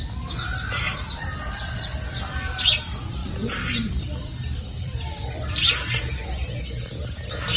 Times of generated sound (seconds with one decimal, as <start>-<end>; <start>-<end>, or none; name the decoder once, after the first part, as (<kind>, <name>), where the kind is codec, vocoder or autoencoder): 3.2-6.6 (vocoder, BigVGAN v2)

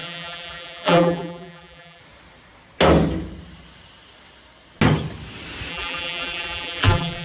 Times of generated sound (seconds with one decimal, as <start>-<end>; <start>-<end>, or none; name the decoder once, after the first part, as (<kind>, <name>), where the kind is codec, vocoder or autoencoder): 0.0-2.0 (vocoder, BigVGAN v2); 5.7-7.2

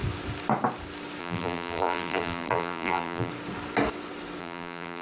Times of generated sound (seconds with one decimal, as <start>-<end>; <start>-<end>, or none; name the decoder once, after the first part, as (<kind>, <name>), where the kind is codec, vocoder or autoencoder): 1.2-3.3 (vocoder, BigVGAN v2); 4.4-5.0

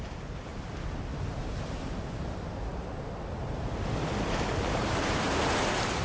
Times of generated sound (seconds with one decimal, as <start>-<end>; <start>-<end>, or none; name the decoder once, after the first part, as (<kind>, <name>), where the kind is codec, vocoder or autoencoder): 0.0-0.5 (vocoder, BigVGAN v2); 1.4-2.7; 5.0-6.0

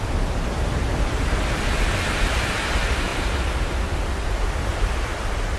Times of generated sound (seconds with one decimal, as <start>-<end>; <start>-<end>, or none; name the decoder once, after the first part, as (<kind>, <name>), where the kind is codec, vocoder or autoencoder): 0.0-3.1 (vocoder, BigVGAN v2); 3.6-5.1

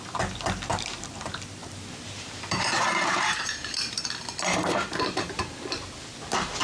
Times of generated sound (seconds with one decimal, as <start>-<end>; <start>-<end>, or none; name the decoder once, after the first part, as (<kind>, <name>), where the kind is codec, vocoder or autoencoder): 1.6-5.4 (vocoder, BigVGAN v2)

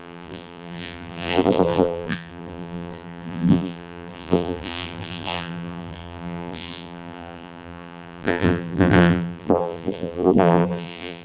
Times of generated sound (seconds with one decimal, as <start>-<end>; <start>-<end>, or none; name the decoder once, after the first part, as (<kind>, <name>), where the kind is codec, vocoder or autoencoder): 0.0-11.2 (vocoder, BigVGAN v2)

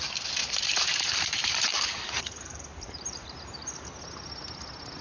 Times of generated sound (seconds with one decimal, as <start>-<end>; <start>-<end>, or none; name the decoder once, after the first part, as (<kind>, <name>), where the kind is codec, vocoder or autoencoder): 0.4-3.4 (vocoder, BigVGAN v2)